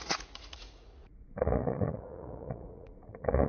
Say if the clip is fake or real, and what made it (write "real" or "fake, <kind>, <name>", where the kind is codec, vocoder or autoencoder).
fake, vocoder, Vocos